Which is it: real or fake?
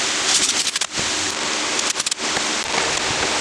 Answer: real